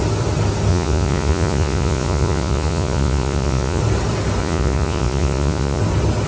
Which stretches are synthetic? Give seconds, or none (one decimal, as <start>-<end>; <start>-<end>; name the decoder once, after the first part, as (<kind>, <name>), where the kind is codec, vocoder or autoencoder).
0.7-3.8 (vocoder, Vocos); 4.4-5.8